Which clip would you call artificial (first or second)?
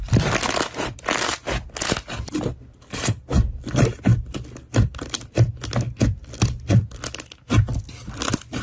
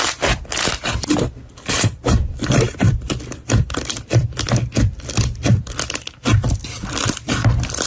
second